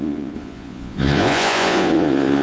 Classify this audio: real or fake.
fake